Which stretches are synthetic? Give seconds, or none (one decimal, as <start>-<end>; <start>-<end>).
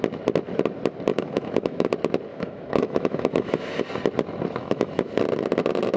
1.1-1.9; 2.3-3.8; 4.6-5.1